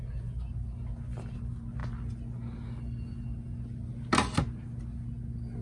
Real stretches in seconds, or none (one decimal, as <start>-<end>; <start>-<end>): 0.0-5.6